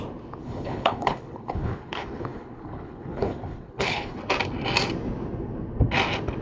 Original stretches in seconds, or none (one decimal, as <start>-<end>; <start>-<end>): 0.0-0.4; 4.2-6.4

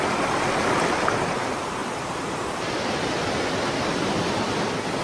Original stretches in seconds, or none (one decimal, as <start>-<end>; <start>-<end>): 0.0-5.0